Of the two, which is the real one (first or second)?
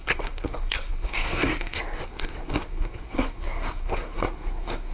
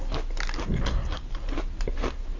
second